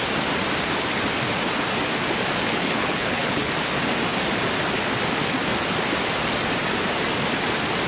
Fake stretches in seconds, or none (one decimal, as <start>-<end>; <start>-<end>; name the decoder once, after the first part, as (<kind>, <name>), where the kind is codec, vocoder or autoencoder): 2.5-3.5 (codec, HILCodec)